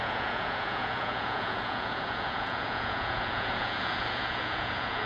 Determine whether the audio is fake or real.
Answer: fake